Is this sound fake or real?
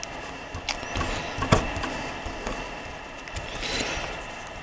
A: real